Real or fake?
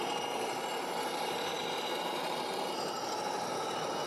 real